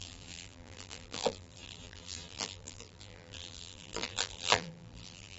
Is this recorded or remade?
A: remade